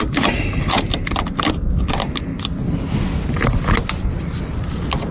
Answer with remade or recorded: recorded